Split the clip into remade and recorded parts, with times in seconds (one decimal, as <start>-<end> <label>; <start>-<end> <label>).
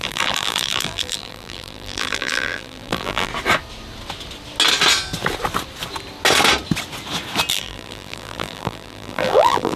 0.0-3.3 remade; 3.3-7.5 recorded; 7.5-9.8 remade